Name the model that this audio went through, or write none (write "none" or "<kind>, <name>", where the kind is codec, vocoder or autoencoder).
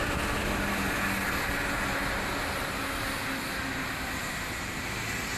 none